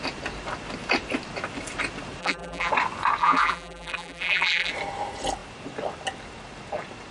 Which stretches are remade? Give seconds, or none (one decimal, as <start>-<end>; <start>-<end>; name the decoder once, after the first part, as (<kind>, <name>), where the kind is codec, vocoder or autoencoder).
2.2-2.7 (vocoder, BigVGAN v2); 3.2-4.7